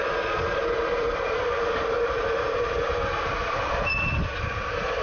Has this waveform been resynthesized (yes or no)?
yes